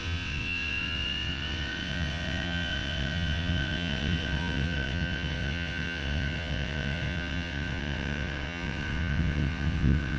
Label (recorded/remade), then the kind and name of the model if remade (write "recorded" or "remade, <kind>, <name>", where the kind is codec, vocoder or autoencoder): remade, vocoder, WaveNeXt